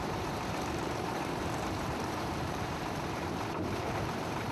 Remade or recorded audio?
remade